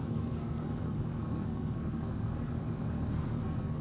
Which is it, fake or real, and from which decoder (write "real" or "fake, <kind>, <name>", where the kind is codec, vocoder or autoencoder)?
fake, codec, SNAC